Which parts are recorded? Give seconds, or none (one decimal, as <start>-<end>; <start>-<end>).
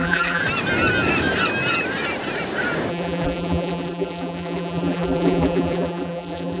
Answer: 0.4-2.9